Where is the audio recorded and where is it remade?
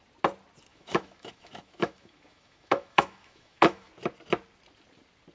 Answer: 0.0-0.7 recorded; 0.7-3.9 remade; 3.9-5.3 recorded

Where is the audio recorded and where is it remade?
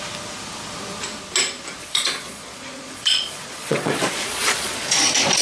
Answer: 0.0-1.8 recorded; 1.8-5.0 remade; 5.0-5.4 recorded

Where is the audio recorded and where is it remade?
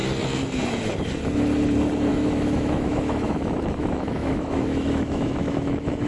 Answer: 0.0-2.1 recorded; 2.1-6.1 remade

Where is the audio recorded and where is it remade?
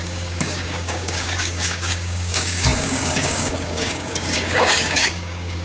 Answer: 0.0-5.6 remade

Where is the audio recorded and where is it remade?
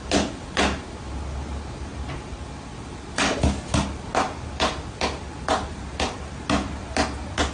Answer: 0.0-7.5 recorded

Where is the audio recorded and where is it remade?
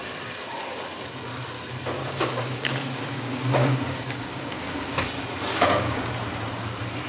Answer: 0.0-2.0 recorded; 2.0-5.0 remade; 5.0-5.5 recorded; 5.5-6.1 remade; 6.1-7.1 recorded